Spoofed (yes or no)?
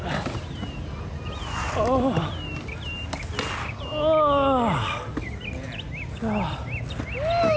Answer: no